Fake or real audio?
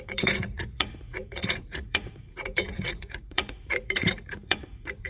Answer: fake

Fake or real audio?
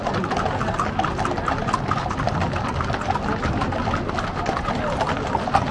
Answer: real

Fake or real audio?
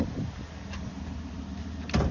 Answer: real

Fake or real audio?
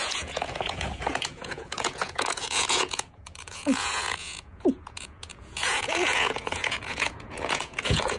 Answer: fake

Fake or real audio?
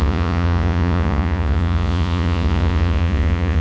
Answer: fake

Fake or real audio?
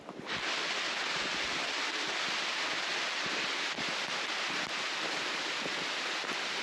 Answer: real